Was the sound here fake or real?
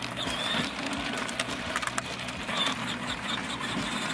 real